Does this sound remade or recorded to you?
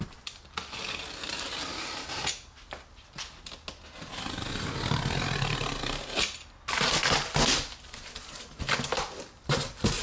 recorded